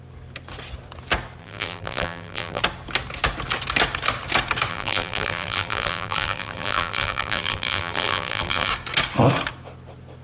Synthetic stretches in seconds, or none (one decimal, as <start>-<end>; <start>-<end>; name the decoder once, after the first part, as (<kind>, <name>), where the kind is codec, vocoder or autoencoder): 1.4-2.6 (vocoder, BigVGAN v2); 4.7-8.7

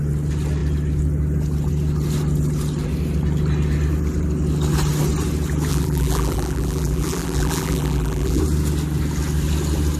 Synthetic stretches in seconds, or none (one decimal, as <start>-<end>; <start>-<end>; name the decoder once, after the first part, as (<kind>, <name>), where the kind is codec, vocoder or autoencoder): 5.7-8.4 (vocoder, BigVGAN v2)

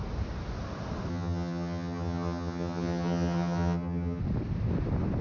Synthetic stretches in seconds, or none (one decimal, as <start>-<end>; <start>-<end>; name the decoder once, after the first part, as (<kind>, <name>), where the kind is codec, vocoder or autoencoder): 1.1-4.2 (vocoder, HiFi-GAN)

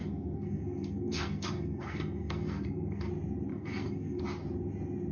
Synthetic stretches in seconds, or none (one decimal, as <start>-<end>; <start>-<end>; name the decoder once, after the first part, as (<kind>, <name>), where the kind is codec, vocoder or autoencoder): 0.0-3.1 (codec, SNAC); 3.5-4.2

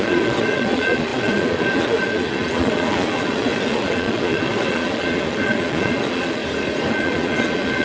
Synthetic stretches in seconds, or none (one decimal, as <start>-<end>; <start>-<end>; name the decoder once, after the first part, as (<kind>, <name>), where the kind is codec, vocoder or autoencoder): 0.0-6.4 (vocoder, Vocos); 6.9-7.8

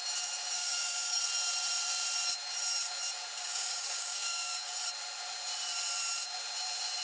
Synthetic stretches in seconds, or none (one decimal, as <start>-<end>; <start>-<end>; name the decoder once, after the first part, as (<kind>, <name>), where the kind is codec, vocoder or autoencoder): 0.4-1.2 (codec, DAC); 3.4-4.7